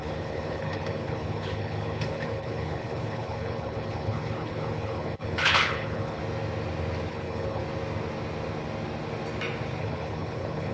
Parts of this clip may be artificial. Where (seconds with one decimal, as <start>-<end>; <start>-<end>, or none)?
0.0-6.2; 7.1-7.6; 9.8-10.7